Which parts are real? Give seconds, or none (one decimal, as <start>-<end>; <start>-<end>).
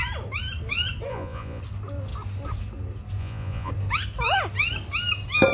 0.0-1.1; 1.6-3.2; 3.7-5.5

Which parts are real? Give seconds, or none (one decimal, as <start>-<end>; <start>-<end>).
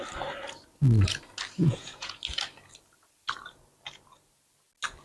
0.0-1.6; 2.2-5.0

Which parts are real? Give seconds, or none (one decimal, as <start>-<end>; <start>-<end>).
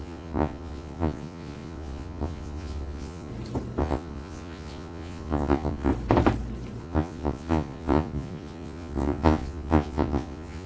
3.3-3.8; 5.9-6.8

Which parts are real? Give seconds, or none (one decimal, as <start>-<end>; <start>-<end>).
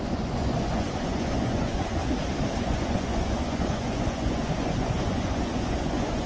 2.0-2.6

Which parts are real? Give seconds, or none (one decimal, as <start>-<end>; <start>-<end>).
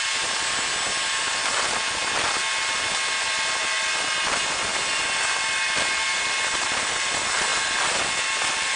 0.0-8.8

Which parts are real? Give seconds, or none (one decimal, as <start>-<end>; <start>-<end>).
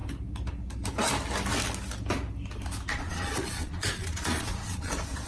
0.0-2.9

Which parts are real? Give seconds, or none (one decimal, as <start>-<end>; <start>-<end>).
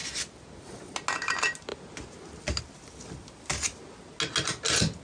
0.0-5.0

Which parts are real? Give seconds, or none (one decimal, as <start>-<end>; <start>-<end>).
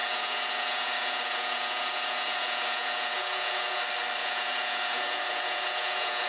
3.8-4.2